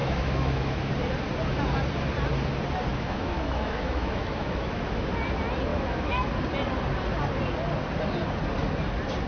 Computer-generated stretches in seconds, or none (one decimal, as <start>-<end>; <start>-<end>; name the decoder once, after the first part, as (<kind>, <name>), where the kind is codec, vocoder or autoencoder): 0.0-0.9 (autoencoder, DAC-VAE); 2.9-5.1; 5.7-6.3